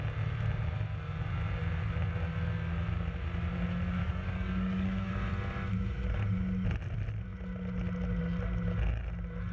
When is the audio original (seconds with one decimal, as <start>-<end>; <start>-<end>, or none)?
0.0-4.0; 5.1-9.5